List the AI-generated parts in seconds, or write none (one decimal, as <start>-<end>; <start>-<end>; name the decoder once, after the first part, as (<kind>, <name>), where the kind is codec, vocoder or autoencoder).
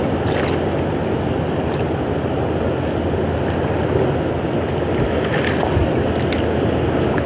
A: none